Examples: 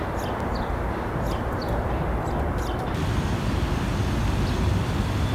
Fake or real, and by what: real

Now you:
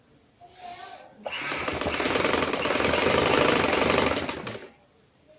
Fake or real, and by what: fake, vocoder, BigVGAN v2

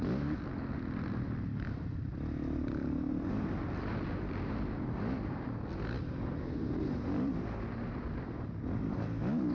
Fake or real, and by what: real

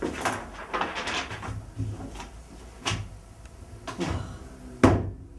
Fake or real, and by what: real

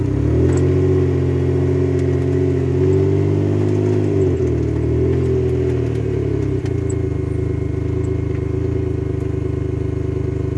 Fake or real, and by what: real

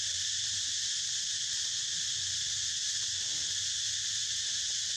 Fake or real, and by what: real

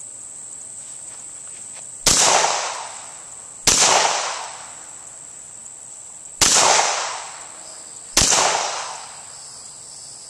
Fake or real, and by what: real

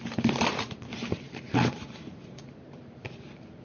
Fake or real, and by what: fake, vocoder, BigVGAN v2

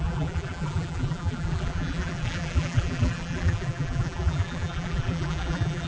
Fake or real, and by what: fake, vocoder, BigVGAN v2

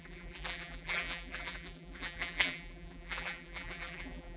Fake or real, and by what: fake, vocoder, BigVGAN v2